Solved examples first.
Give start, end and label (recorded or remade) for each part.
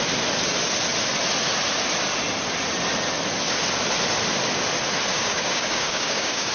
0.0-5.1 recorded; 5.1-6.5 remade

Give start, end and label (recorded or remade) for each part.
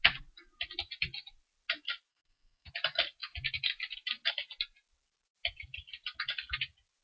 0.0-2.1 recorded; 2.1-2.7 remade; 2.7-7.0 recorded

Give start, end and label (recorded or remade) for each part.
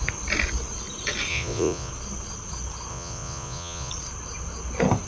0.0-1.3 recorded; 1.3-1.9 remade; 1.9-2.9 recorded; 2.9-3.9 remade; 3.9-5.1 recorded